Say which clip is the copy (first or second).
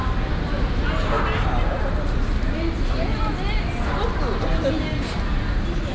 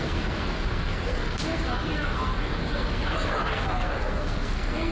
second